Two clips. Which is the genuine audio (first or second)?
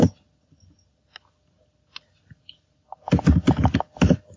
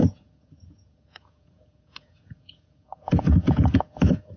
first